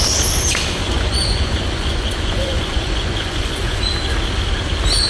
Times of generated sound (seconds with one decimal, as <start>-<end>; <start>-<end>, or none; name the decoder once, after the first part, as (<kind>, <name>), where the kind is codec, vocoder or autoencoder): 0.8-3.9 (vocoder, Vocos)